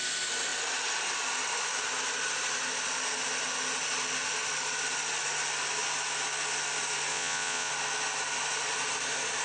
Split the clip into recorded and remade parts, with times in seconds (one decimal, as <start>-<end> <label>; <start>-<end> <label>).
0.0-7.1 recorded; 7.1-7.7 remade; 7.7-9.4 recorded